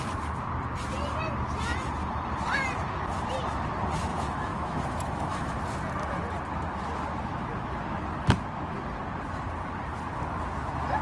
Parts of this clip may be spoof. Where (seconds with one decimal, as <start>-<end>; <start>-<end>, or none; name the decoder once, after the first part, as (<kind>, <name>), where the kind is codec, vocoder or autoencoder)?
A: 4.1-5.6 (autoencoder, DAC-VAE)